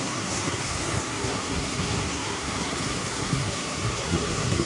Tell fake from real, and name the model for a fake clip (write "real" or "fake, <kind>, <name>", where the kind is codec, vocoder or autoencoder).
fake, codec, SNAC